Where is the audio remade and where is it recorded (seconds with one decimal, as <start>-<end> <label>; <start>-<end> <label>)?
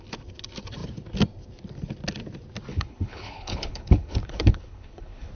0.0-2.7 recorded; 2.7-5.3 remade